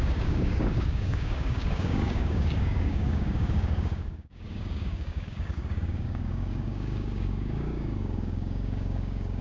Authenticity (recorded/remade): remade